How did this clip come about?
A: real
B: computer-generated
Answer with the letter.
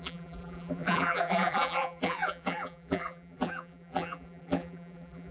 B